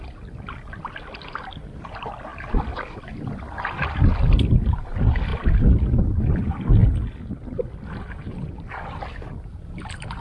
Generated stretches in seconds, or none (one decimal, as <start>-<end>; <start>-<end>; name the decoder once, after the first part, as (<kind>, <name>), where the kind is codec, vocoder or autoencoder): 0.0-2.3 (vocoder, BigVGAN v2); 3.0-5.3; 5.8-6.8; 7.3-10.2